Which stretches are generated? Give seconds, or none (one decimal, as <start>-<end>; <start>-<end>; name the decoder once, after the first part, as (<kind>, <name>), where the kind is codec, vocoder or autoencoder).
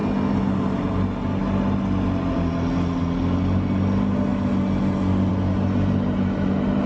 none